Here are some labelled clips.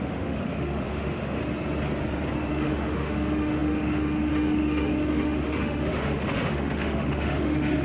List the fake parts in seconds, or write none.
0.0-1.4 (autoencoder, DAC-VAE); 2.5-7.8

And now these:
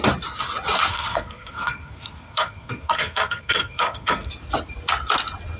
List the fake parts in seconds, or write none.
0.9-4.3 (codec, SNAC)

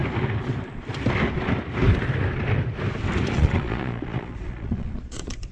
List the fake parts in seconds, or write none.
3.3-5.5 (vocoder, Vocos)

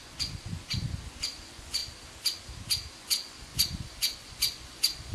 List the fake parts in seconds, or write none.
0.0-1.8 (vocoder, Vocos); 3.0-5.1

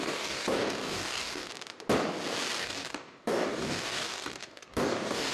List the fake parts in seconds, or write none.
0.0-1.5 (codec, DAC); 2.6-5.3

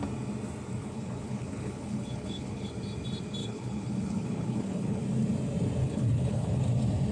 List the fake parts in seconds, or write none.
0.8-2.7 (codec, HILCodec); 3.4-5.0; 5.8-6.6